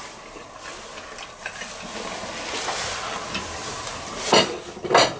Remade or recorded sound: recorded